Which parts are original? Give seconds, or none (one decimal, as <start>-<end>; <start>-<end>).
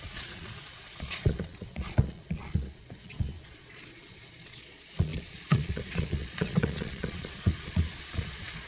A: none